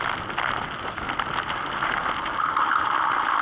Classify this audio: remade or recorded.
recorded